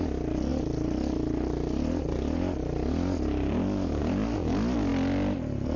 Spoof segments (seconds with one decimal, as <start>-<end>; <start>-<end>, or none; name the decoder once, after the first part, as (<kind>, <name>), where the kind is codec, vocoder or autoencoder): none